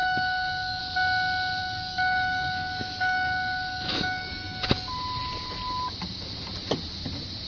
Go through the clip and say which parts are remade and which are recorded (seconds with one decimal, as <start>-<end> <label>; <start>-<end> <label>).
0.0-0.8 remade; 0.8-1.6 recorded; 1.6-4.9 remade; 4.9-7.5 recorded